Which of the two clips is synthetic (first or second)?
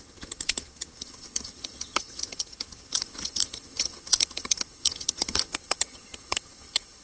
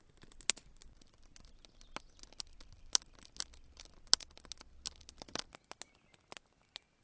first